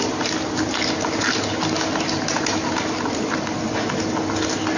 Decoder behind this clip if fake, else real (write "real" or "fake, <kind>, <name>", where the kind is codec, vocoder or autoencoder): real